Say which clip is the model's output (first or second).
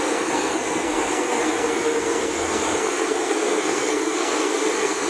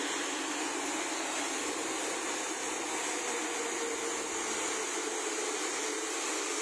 first